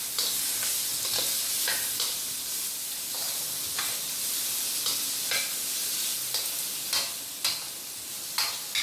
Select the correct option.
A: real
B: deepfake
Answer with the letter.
A